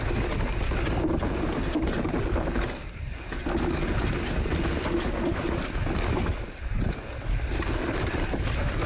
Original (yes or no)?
yes